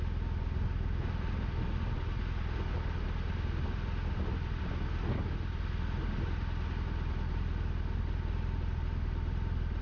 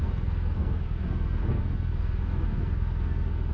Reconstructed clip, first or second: second